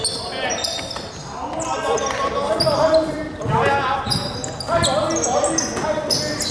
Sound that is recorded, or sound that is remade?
recorded